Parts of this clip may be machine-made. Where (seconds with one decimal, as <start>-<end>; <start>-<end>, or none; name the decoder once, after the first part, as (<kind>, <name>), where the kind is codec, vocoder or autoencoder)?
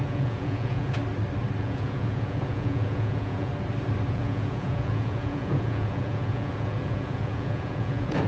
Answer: 0.0-1.0 (vocoder, Vocos); 1.6-3.5; 4.1-8.3